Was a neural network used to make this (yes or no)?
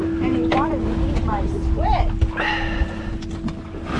no